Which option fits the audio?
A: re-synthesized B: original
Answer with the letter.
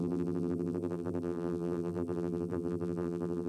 A